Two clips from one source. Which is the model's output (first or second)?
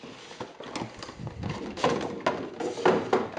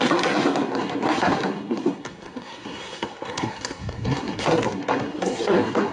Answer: second